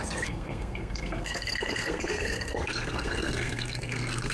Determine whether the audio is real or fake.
fake